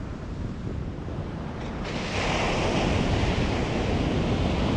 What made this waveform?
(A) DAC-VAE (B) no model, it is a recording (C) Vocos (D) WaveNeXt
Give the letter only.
B